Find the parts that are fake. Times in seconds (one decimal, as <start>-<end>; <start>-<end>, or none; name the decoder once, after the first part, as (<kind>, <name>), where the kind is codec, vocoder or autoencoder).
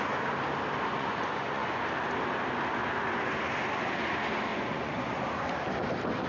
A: 0.9-1.8 (vocoder, Vocos); 4.5-5.1